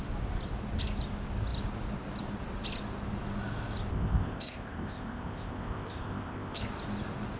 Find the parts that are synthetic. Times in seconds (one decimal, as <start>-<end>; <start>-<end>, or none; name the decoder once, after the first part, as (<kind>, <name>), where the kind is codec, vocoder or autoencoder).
3.9-6.6 (codec, ZipCodec)